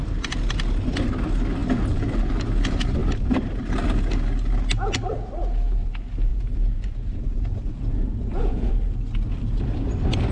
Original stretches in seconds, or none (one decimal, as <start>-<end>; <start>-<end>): 0.0-6.3; 8.7-10.3